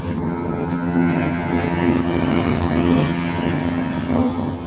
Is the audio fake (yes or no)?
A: yes